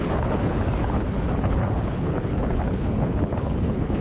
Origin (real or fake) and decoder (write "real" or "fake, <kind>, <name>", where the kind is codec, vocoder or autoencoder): fake, codec, HILCodec